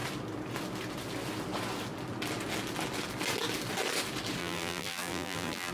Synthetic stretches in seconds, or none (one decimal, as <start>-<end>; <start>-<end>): 4.4-5.7